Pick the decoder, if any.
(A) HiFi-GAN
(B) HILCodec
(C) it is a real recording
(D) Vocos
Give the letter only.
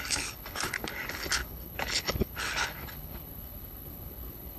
B